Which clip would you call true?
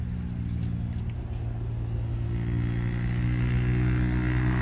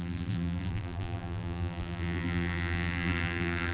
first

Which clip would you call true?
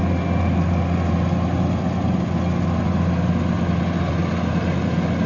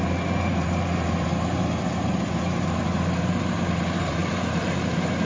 first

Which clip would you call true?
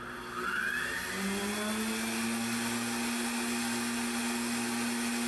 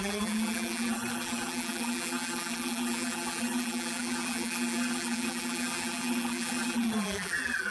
first